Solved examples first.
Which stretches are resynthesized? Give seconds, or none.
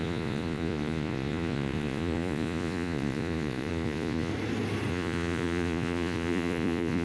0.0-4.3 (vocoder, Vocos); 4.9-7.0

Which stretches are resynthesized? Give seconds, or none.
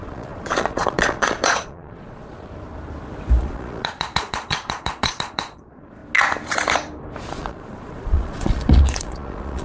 0.0-2.5 (vocoder, Vocos); 3.4-6.0; 7.2-9.6